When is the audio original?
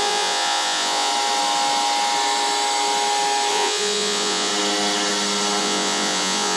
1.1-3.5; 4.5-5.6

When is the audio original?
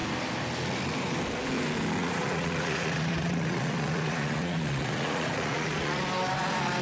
0.0-2.0; 6.0-6.8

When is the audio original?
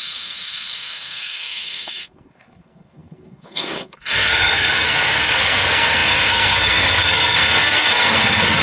none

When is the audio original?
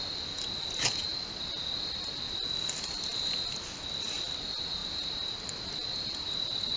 0.0-6.8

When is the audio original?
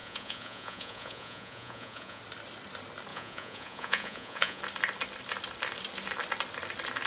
2.2-3.1; 4.6-7.1